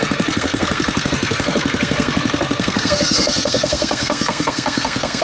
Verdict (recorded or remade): remade